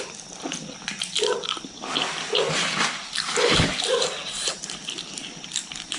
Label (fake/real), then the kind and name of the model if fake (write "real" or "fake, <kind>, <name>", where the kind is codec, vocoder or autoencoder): real